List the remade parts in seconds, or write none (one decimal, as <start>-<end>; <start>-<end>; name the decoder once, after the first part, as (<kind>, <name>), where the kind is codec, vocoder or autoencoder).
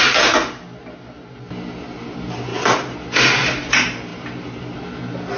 none